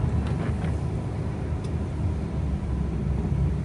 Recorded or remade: recorded